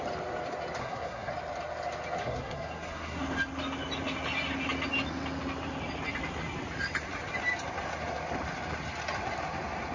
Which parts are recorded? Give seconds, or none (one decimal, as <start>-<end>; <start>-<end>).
0.0-0.8; 1.3-2.2; 3.2-9.9